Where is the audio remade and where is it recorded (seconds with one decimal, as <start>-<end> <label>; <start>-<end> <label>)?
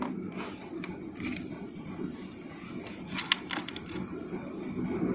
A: 0.0-5.1 recorded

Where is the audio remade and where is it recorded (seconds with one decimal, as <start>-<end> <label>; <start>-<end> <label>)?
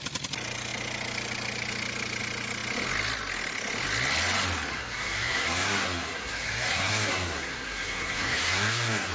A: 0.0-4.7 recorded; 4.7-9.1 remade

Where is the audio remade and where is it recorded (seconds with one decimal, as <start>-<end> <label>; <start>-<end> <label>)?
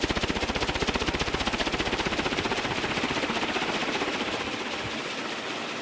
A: 0.0-5.8 recorded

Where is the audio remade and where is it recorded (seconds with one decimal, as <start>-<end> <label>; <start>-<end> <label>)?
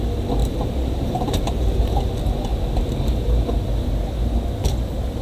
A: 0.0-0.4 recorded; 0.4-2.0 remade; 2.0-5.2 recorded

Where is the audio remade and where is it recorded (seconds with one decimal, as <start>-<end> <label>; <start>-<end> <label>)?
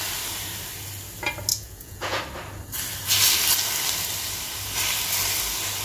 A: 0.0-1.5 recorded; 1.5-2.2 remade; 2.2-5.8 recorded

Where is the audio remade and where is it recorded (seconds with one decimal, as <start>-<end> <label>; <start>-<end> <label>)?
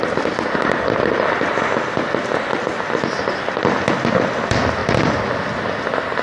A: 0.0-6.2 recorded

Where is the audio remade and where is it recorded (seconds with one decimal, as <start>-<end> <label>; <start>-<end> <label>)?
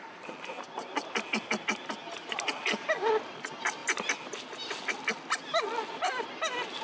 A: 0.0-6.8 recorded